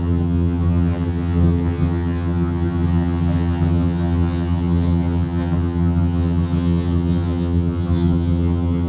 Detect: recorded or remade remade